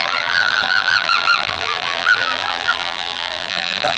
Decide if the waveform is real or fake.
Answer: fake